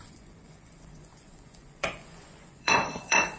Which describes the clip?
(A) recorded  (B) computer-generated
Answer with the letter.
B